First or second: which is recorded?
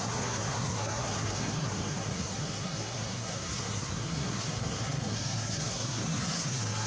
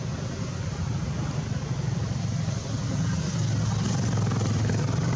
second